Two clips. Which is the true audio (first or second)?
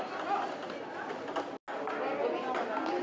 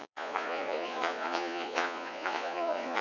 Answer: first